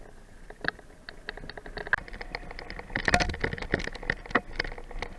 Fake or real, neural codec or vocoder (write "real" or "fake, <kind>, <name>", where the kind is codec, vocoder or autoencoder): real